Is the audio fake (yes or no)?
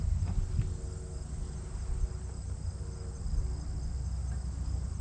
no